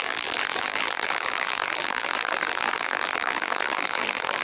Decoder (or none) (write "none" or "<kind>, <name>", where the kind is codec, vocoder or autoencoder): vocoder, BigVGAN v2